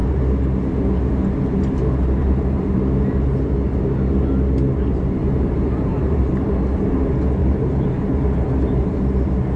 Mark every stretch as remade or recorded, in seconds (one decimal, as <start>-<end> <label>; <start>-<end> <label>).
0.0-2.2 recorded; 2.2-2.8 remade; 2.8-5.2 recorded; 5.2-6.2 remade; 6.2-7.4 recorded; 7.4-8.5 remade; 8.5-9.6 recorded